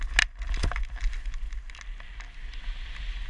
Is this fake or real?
real